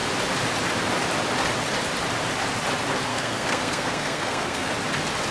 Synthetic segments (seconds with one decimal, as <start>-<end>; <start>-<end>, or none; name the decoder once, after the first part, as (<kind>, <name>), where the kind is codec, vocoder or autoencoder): 3.1-4.7 (codec, SNAC)